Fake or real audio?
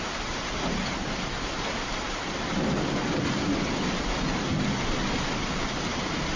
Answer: real